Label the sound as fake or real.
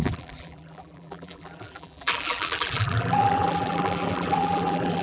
fake